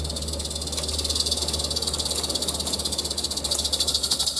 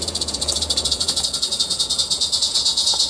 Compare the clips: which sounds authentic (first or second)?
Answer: first